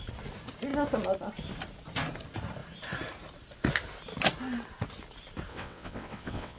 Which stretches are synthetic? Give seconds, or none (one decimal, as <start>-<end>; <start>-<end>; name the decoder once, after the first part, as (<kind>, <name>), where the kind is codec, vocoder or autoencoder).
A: 5.5-6.6 (vocoder, WaveNeXt)